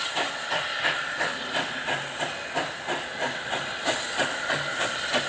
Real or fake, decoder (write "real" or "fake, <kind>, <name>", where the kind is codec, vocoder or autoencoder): real